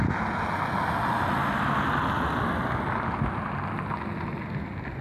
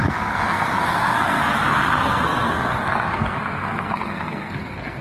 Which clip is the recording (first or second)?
first